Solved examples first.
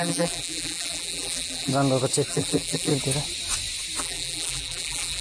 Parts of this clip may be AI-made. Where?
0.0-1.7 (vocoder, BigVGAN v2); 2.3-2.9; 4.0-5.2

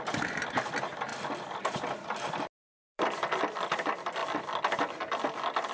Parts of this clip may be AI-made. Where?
1.1-3.4 (vocoder, BigVGAN v2)

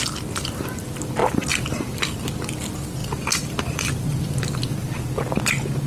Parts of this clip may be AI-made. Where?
1.2-2.1 (vocoder, BigVGAN v2); 3.0-5.0

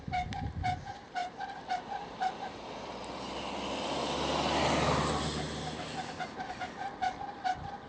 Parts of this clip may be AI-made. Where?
1.2-2.7 (vocoder, BigVGAN v2)

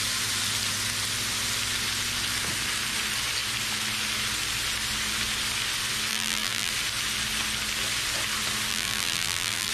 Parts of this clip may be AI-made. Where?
6.1-6.7 (vocoder, BigVGAN v2); 8.7-9.7

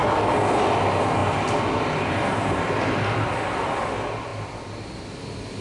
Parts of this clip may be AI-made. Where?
1.2-2.6 (vocoder, BigVGAN v2); 4.3-4.8

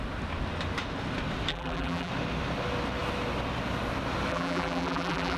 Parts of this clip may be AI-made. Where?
1.5-2.1 (vocoder, BigVGAN v2); 4.3-5.4

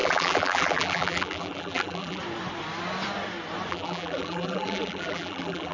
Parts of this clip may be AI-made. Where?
0.0-2.2 (vocoder, BigVGAN v2); 3.7-5.7